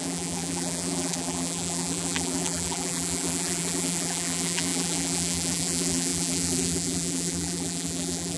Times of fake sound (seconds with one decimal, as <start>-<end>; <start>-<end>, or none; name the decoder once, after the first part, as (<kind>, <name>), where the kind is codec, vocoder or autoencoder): 0.0-8.4 (vocoder, BigVGAN v2)